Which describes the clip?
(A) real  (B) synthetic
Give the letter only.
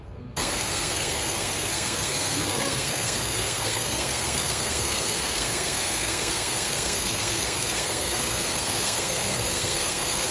B